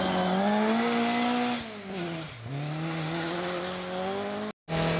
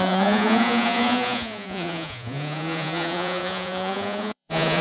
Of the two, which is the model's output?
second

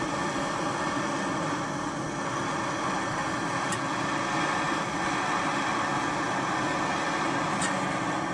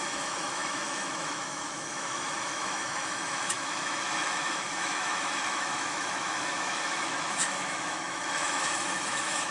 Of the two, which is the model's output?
second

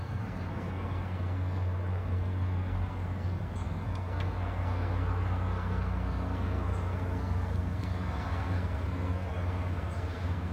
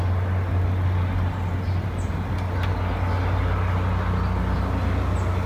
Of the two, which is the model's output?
first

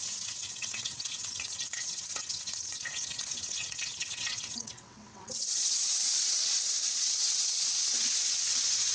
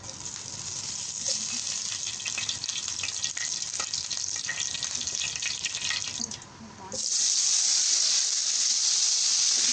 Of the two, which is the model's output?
first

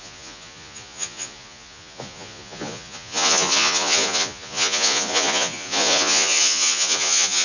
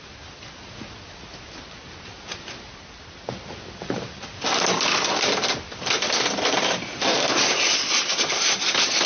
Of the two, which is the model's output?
first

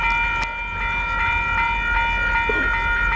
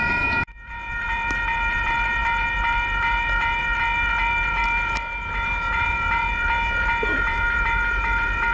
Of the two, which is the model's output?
second